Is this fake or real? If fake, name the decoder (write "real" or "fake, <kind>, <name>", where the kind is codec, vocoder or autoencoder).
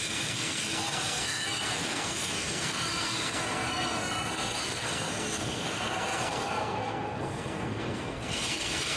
fake, codec, SNAC